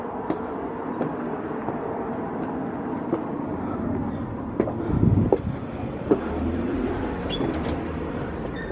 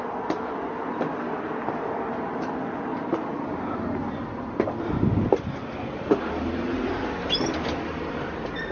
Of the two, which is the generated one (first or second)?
first